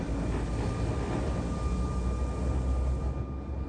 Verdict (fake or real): real